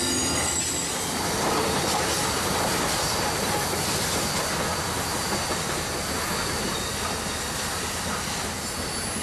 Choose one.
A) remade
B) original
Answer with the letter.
B